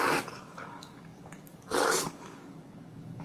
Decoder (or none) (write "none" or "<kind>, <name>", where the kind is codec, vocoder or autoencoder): codec, DAC